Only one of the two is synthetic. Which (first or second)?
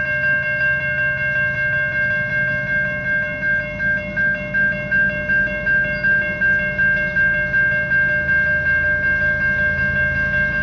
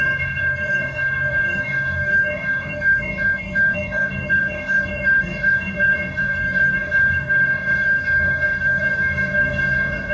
second